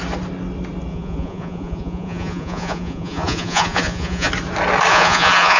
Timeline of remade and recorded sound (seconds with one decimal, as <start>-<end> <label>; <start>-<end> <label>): 0.0-0.9 recorded; 0.9-4.3 remade; 4.3-4.9 recorded; 4.9-5.6 remade